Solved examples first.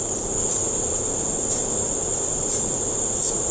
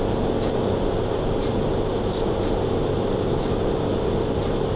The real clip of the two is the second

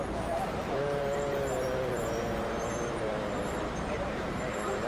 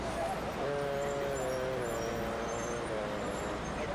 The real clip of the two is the second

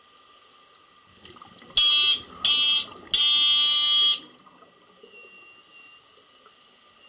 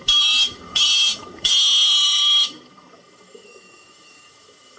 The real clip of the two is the first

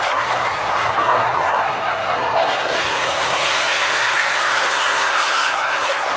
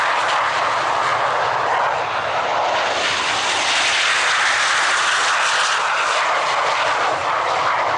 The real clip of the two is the second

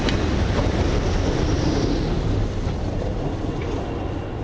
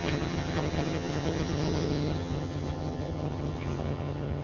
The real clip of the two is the first